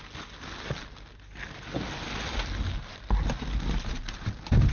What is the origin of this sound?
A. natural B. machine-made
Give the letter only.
A